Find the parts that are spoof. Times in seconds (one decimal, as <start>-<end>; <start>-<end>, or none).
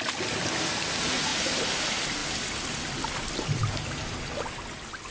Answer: 1.3-1.8; 3.6-4.1